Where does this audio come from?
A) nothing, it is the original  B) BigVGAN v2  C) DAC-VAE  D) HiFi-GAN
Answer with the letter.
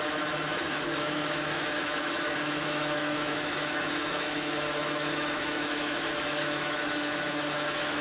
C